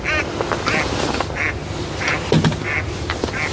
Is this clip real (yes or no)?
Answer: yes